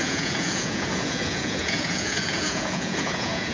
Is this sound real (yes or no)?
no